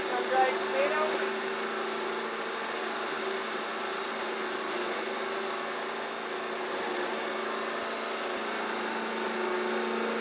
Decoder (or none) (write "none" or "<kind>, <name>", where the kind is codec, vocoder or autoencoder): none